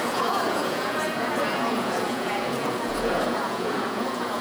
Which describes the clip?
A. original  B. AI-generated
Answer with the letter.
B